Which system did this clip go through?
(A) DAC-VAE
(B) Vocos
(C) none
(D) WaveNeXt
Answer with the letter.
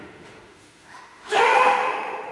A